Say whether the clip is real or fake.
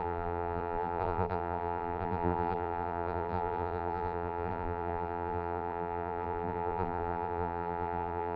fake